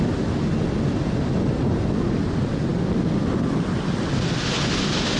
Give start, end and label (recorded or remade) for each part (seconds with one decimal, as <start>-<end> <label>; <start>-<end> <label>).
0.0-5.2 recorded